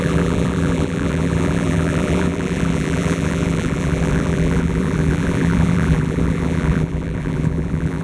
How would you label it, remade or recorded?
remade